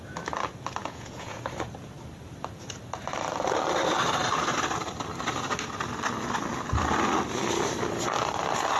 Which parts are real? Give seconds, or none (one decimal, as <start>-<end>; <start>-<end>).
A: 0.0-0.8; 1.4-8.8